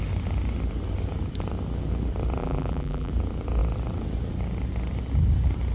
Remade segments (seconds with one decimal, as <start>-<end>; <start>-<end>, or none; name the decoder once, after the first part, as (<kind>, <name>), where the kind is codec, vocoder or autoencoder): 2.4-3.1 (vocoder, BigVGAN v2)